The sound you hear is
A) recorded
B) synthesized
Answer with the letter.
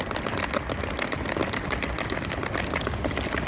A